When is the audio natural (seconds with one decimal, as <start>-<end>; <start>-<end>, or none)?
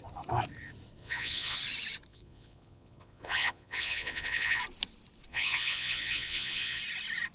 0.0-1.0; 1.6-2.1; 4.6-5.3; 6.8-7.3